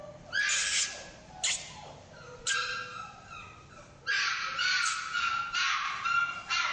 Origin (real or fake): real